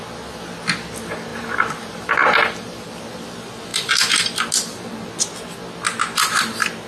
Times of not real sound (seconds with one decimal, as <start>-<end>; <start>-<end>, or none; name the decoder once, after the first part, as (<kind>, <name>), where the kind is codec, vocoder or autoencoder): 1.3-3.0 (vocoder, BigVGAN v2); 3.7-5.2